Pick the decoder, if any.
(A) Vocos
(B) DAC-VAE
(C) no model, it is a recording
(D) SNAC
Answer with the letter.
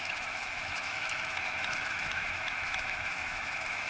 B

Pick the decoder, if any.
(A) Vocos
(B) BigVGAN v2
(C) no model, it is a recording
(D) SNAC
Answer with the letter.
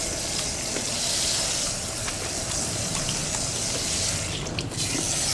C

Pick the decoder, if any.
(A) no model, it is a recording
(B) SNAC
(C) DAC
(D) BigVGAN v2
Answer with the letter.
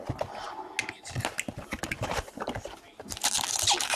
A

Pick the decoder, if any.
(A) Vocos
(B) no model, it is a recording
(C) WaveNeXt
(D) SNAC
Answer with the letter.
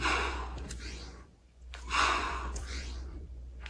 A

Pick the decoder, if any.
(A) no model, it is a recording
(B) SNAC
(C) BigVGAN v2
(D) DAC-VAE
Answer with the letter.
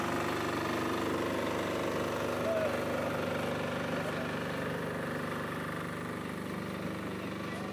A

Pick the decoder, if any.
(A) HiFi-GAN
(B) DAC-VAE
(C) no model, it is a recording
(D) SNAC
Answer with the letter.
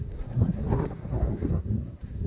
D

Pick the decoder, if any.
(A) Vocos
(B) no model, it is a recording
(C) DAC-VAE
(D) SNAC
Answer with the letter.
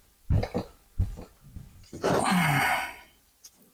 B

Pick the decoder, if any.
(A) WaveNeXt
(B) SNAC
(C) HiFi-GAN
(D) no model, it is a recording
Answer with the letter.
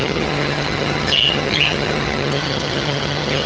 C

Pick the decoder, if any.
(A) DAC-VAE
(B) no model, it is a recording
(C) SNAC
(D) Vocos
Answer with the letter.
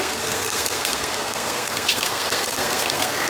C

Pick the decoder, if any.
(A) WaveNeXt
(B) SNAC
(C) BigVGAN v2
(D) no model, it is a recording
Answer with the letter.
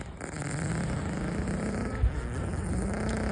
D